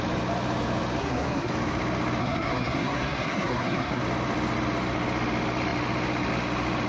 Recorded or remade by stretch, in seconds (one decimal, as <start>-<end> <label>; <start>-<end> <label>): 0.0-1.0 recorded; 1.0-1.5 remade; 1.5-2.2 recorded; 2.2-4.0 remade; 4.0-6.9 recorded